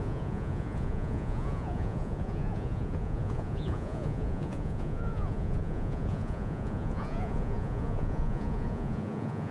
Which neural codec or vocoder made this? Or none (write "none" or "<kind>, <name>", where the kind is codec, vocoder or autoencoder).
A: vocoder, Vocos